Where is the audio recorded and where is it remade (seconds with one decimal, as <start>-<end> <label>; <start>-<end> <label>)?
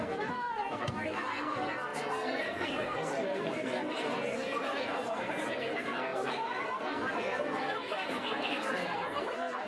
0.0-9.7 remade